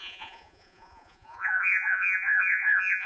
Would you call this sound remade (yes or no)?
yes